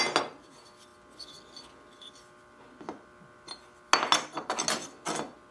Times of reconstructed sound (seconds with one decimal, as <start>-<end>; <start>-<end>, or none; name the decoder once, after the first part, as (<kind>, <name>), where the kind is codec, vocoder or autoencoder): none